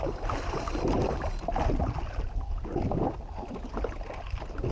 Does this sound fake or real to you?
real